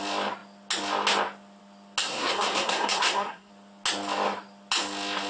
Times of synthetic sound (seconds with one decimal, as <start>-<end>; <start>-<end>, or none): 2.0-3.5